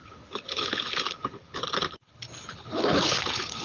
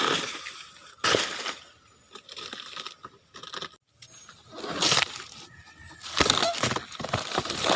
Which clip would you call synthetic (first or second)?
first